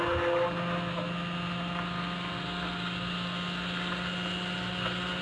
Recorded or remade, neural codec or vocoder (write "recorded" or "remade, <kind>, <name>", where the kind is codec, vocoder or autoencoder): recorded